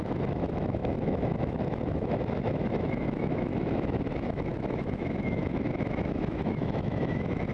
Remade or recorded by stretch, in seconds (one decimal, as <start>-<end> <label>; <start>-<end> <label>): 0.0-7.5 remade